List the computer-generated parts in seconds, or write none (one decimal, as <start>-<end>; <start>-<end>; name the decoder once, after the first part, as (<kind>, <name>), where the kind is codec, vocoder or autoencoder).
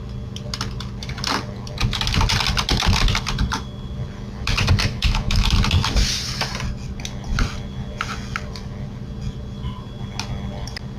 4.8-5.5 (autoencoder, DAC-VAE)